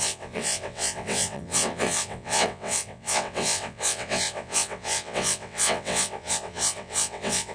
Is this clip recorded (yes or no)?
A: no